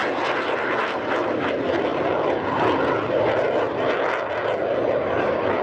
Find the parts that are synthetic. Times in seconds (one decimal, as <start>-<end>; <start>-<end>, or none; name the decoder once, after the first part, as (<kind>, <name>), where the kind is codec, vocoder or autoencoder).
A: none